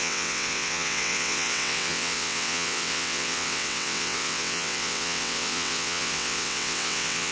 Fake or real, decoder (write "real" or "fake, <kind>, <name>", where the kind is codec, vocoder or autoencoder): fake, vocoder, WaveNeXt